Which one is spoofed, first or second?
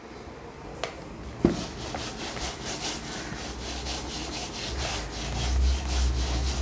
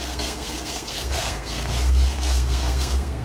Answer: second